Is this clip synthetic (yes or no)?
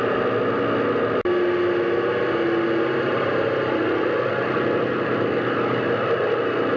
no